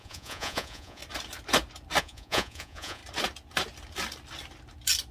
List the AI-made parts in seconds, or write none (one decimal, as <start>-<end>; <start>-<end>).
0.0-1.0; 2.0-3.0